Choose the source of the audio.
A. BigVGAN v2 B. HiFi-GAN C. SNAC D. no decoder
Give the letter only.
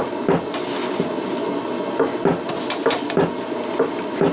D